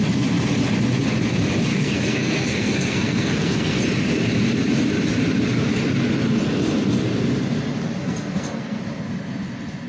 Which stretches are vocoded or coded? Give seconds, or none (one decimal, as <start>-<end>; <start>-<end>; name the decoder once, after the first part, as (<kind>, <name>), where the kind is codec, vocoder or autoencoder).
1.7-3.8 (codec, SNAC); 8.0-8.8